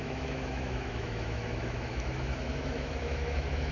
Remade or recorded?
remade